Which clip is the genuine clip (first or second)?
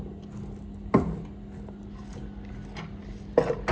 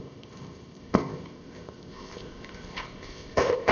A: first